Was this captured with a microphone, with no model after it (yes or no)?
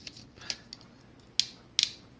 yes